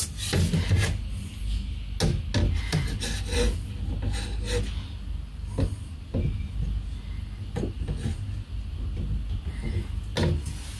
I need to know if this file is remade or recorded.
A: recorded